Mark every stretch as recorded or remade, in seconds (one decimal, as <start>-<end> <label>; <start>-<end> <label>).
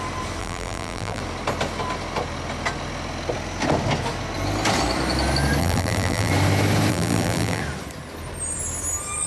0.0-0.4 recorded; 0.4-1.2 remade; 1.2-5.6 recorded; 5.6-6.3 remade; 6.3-6.9 recorded; 6.9-7.6 remade; 7.6-9.3 recorded